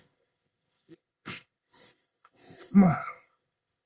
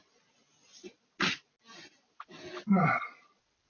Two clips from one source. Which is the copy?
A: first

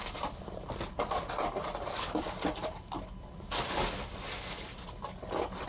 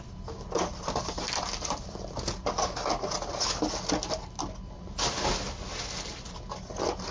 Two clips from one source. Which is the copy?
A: first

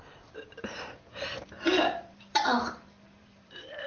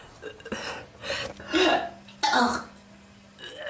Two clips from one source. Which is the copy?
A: first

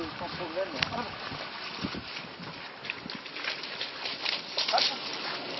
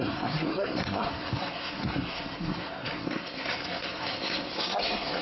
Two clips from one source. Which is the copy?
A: second